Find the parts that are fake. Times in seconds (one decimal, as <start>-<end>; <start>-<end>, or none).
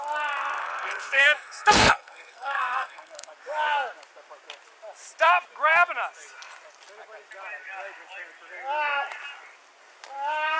0.6-3.3